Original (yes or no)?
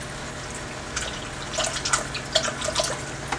yes